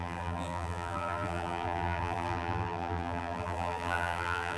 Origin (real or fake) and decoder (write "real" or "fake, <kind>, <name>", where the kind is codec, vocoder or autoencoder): fake, vocoder, BigVGAN v2